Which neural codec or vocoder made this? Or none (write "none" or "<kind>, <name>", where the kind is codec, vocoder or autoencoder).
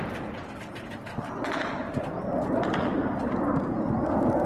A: none